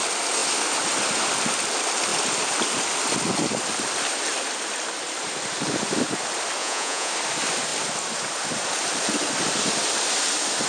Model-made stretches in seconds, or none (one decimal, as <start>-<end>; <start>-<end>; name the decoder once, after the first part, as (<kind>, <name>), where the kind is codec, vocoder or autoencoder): 6.6-7.1 (vocoder, Vocos)